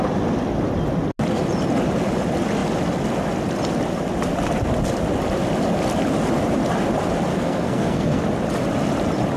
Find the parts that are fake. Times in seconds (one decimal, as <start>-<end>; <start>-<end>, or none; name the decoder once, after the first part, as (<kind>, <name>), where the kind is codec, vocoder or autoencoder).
7.3-8.2 (codec, SNAC)